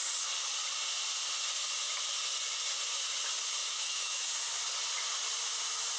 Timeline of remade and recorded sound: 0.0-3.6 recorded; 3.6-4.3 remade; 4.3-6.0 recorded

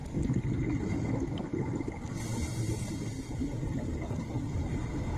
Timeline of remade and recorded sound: 0.0-0.8 recorded; 0.8-1.5 remade; 1.5-4.6 recorded; 4.6-5.2 remade

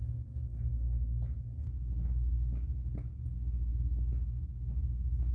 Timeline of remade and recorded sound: 0.0-3.7 recorded; 3.7-5.3 remade

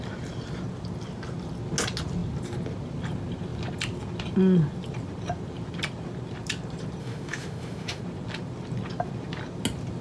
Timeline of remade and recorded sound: 0.0-7.0 recorded; 7.0-8.0 remade; 8.0-10.0 recorded

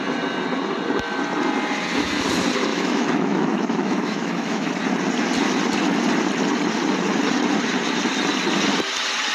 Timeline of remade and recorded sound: 0.0-2.7 recorded; 2.7-4.7 remade; 4.7-9.3 recorded

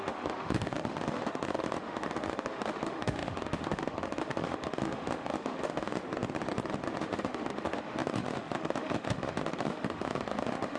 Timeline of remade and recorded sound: 0.0-6.0 remade; 6.0-7.0 recorded; 7.0-10.8 remade